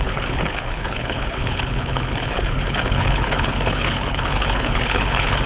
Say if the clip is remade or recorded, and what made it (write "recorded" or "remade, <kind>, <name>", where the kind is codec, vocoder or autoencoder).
remade, codec, HILCodec